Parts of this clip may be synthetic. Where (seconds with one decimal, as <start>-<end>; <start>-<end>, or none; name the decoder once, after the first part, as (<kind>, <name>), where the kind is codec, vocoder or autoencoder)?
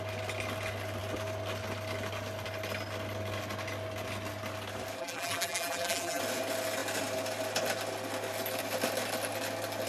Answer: 5.0-6.2 (vocoder, BigVGAN v2)